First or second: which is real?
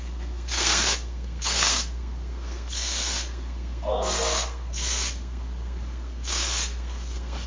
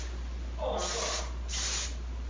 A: second